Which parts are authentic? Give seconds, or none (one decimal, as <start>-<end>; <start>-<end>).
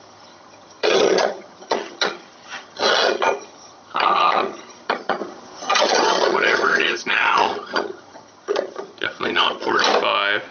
9.8-10.5